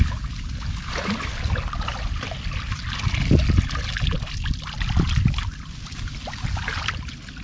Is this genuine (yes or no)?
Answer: yes